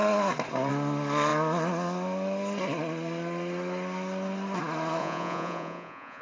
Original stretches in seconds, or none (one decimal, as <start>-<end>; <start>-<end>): 0.0-5.0